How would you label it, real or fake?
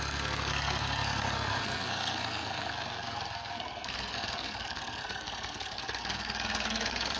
fake